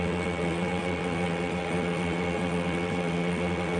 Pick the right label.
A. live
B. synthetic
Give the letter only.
B